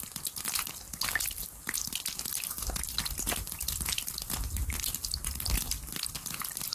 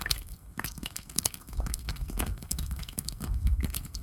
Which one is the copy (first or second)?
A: second